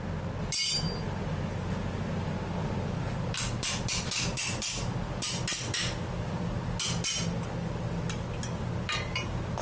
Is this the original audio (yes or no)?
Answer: yes